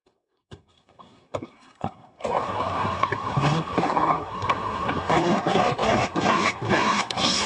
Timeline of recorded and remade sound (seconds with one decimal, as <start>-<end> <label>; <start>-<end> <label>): 0.0-7.5 remade